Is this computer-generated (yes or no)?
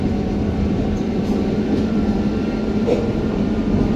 yes